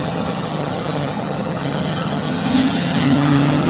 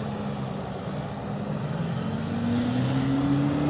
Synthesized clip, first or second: first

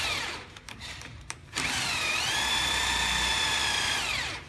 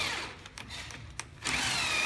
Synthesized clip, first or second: first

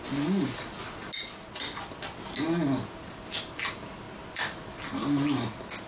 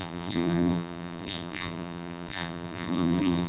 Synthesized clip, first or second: second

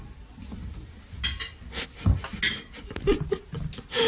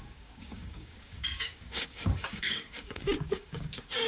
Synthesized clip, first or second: second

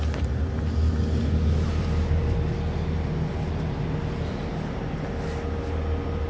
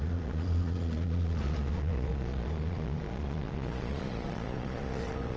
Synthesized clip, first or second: second